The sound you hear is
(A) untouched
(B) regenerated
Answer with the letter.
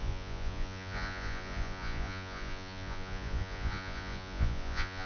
B